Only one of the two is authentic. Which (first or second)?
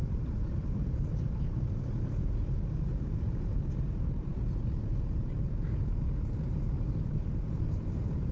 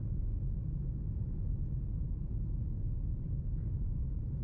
second